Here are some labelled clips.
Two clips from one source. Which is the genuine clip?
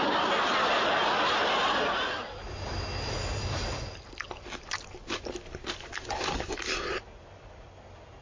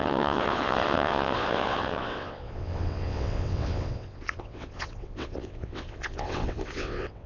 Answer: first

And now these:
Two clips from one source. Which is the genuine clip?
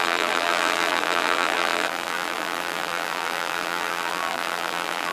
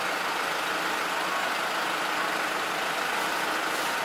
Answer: second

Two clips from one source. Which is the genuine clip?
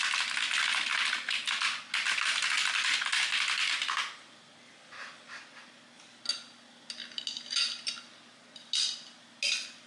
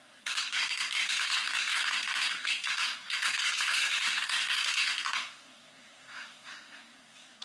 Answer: first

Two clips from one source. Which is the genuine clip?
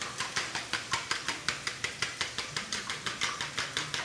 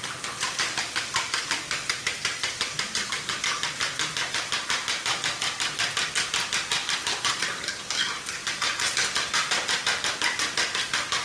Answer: first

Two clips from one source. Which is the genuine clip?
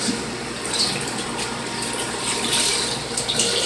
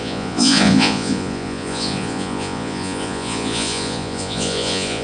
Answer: first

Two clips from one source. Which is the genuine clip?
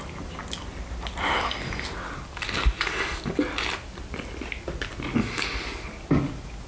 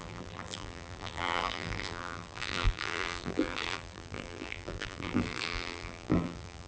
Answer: first